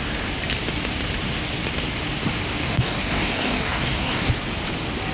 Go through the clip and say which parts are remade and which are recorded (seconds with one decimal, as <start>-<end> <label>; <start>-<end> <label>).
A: 0.0-2.6 recorded; 2.6-4.3 remade; 4.3-5.1 recorded